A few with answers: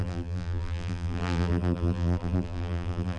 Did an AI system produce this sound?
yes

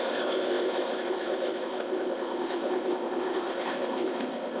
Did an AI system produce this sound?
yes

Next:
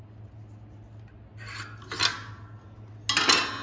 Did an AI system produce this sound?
no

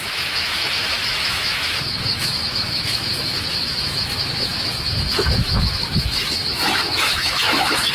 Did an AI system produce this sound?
yes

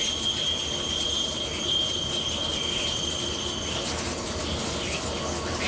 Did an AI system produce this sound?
no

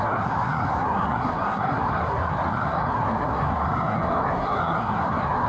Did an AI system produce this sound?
yes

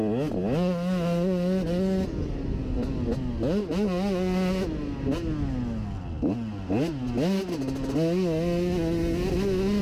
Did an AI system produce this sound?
no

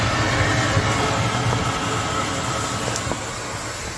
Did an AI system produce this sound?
no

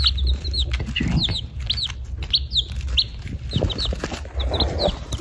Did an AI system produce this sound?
no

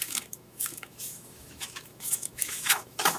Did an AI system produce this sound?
yes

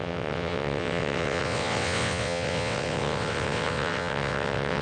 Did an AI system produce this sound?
yes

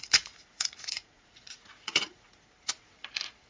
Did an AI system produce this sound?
yes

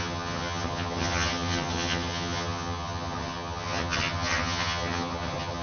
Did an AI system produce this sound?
yes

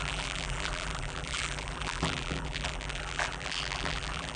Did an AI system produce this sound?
yes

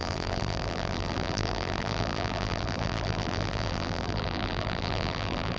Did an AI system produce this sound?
yes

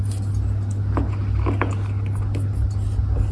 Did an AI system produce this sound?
no